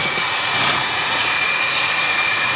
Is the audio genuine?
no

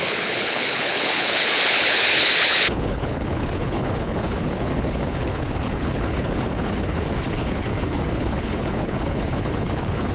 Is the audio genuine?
no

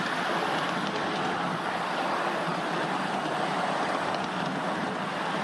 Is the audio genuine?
yes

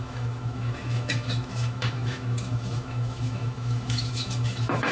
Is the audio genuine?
no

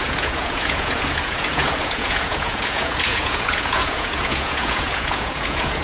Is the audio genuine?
no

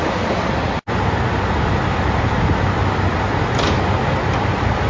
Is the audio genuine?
yes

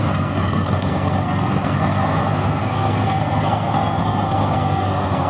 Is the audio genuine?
no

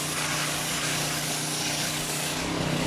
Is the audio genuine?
no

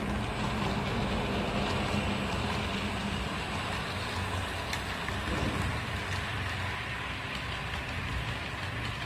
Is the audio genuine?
yes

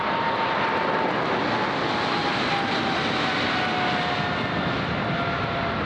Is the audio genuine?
yes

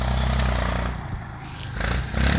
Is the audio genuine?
yes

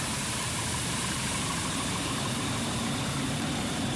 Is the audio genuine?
no